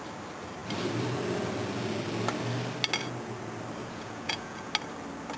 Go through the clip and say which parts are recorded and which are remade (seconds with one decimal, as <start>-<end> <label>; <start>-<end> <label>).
0.0-3.8 recorded; 3.8-4.7 remade; 4.7-5.4 recorded